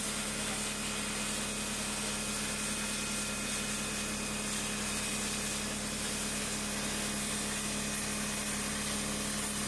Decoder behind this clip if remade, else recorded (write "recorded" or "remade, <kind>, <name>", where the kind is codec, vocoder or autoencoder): recorded